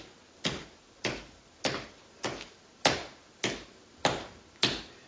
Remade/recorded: recorded